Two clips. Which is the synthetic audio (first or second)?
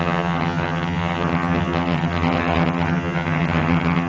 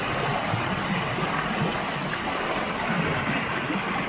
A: first